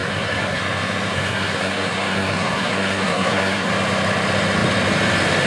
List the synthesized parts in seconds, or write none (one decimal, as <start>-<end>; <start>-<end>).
0.0-0.6; 1.1-3.7